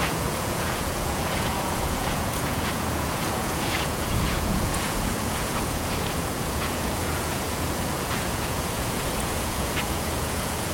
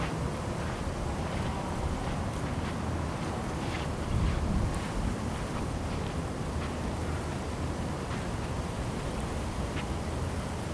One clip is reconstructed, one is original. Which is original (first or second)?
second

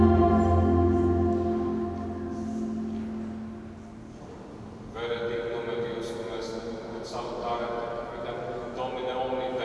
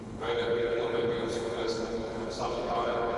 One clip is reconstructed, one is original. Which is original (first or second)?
first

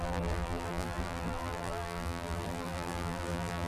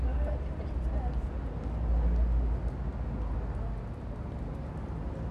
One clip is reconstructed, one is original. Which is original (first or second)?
second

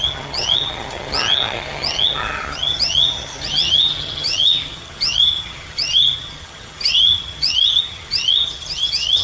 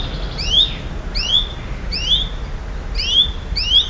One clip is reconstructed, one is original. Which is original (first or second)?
second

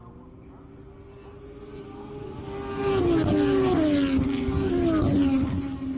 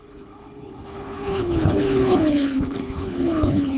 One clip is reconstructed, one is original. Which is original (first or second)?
first